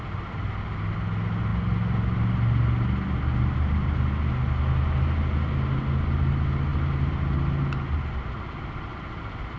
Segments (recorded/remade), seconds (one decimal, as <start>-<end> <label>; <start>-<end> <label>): 0.0-9.6 recorded